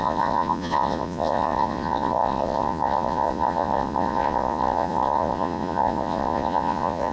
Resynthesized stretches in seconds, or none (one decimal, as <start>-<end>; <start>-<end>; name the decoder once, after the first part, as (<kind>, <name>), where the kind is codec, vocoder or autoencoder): 0.0-7.1 (vocoder, Vocos)